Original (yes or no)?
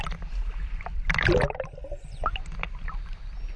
yes